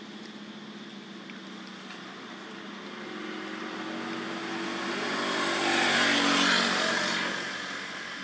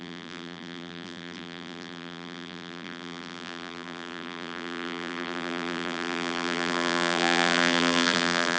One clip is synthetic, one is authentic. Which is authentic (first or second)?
first